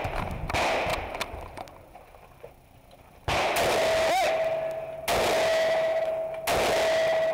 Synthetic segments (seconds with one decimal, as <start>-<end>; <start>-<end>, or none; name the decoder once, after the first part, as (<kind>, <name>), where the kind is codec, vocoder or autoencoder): 5.5-6.1 (autoencoder, DAC-VAE)